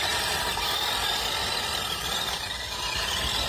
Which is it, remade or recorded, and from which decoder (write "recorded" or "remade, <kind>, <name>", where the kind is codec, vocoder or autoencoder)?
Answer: remade, vocoder, BigVGAN v2